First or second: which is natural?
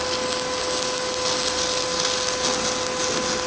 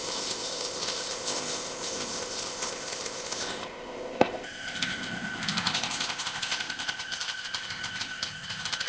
first